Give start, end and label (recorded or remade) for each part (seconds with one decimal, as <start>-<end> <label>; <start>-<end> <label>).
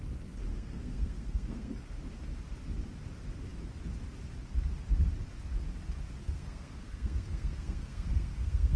0.0-0.5 recorded; 0.5-1.7 remade; 1.7-6.2 recorded; 6.2-8.8 remade